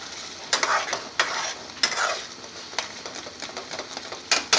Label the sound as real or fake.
real